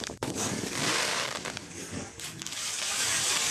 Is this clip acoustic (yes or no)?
no